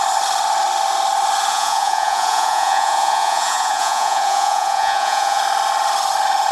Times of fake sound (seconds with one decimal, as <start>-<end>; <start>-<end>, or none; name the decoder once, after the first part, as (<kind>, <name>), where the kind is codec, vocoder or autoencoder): 1.5-5.4 (vocoder, Vocos)